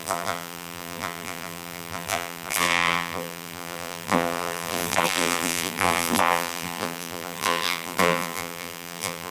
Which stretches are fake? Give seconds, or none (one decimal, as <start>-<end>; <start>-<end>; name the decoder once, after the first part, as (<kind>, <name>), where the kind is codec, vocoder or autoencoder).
0.0-9.3 (vocoder, BigVGAN v2)